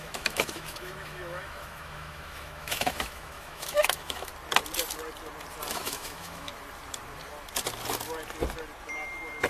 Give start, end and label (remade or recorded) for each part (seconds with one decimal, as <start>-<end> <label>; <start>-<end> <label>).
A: 0.0-4.3 remade; 4.3-5.7 recorded; 5.7-6.5 remade; 6.5-9.5 recorded